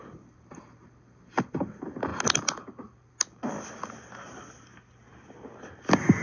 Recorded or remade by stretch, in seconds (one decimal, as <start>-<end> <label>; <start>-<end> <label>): 0.0-6.2 recorded